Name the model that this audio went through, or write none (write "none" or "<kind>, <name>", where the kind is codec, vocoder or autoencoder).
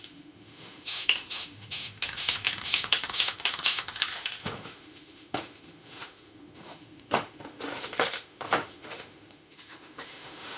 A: autoencoder, DAC-VAE